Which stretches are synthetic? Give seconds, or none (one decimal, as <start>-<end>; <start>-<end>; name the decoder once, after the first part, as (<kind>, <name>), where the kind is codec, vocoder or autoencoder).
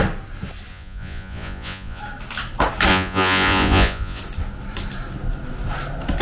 0.7-2.0 (vocoder, Vocos); 2.9-4.2